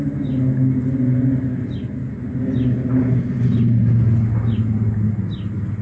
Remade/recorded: recorded